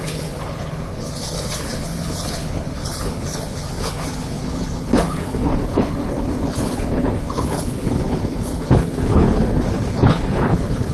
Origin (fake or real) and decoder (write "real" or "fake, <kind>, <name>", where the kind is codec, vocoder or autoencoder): fake, codec, HILCodec